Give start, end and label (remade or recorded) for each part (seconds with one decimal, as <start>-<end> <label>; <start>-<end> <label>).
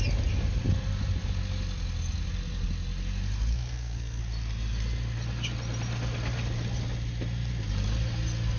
0.0-3.5 recorded; 3.5-4.2 remade; 4.2-8.6 recorded